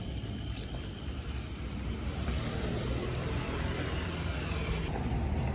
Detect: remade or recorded remade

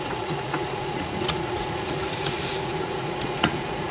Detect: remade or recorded remade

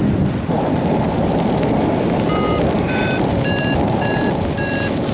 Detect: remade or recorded remade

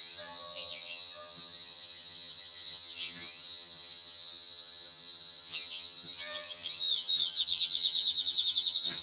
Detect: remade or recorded remade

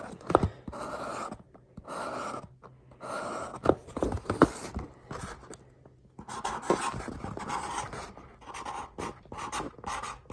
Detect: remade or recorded recorded